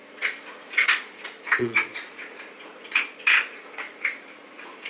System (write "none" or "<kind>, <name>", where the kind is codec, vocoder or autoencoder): vocoder, Vocos